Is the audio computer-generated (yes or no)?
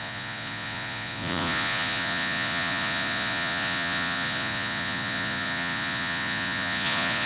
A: yes